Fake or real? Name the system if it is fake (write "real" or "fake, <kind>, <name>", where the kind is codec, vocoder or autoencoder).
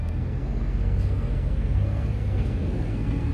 fake, codec, SNAC